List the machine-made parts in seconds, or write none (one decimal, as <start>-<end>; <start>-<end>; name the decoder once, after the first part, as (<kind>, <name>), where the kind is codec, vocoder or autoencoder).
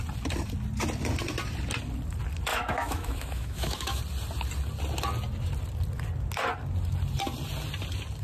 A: 2.5-4.0 (autoencoder, DAC-VAE)